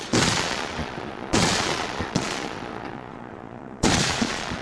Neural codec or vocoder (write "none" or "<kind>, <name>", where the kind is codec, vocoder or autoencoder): vocoder, Vocos